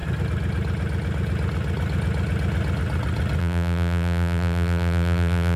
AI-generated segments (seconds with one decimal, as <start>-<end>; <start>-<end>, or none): 3.4-5.6